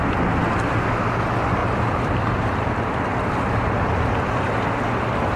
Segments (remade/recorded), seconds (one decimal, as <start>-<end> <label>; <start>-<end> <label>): 0.0-1.6 recorded; 1.6-2.7 remade; 2.7-5.4 recorded